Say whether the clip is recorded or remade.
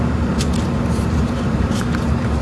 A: remade